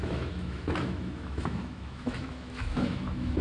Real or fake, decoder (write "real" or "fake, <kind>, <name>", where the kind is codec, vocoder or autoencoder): fake, autoencoder, DAC-VAE